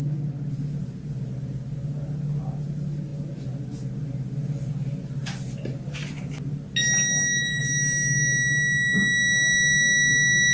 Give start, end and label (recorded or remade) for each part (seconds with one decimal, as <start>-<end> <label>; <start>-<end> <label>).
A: 0.0-10.5 recorded